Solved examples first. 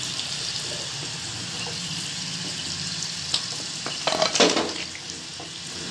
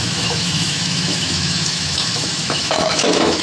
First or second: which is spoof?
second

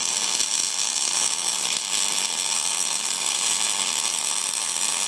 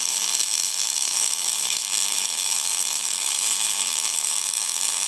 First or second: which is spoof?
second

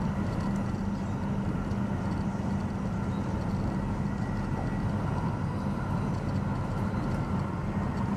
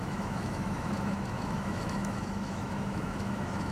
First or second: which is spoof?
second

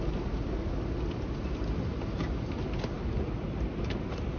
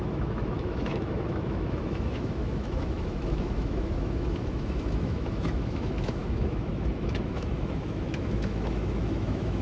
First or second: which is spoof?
second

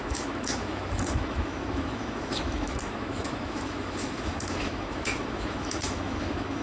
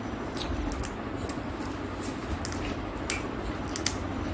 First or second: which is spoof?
first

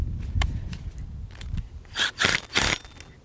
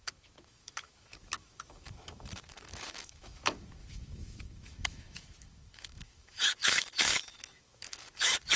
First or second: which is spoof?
second